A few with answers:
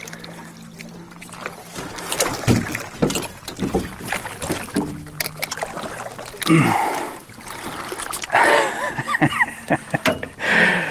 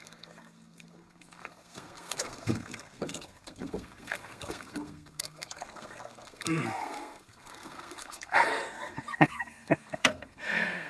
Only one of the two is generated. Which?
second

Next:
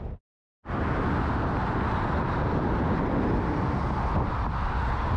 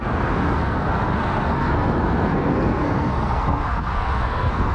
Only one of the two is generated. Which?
second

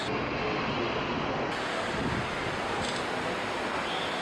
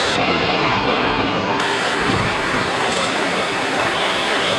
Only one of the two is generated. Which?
second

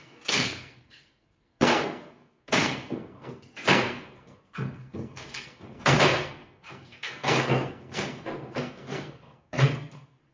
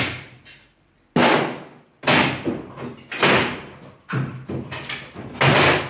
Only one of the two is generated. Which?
first